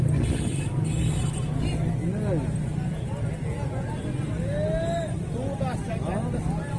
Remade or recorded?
recorded